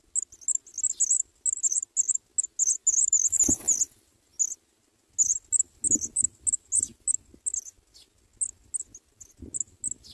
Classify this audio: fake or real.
real